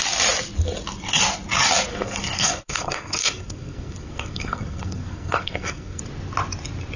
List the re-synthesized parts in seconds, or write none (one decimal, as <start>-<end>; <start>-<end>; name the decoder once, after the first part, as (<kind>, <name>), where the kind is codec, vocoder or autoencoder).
1.9-6.0 (codec, SNAC)